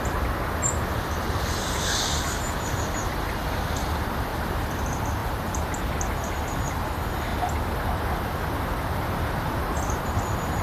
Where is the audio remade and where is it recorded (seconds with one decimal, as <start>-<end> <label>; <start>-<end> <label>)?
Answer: 0.0-4.3 recorded; 4.3-4.8 remade; 4.8-10.6 recorded